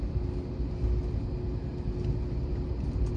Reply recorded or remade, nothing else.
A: recorded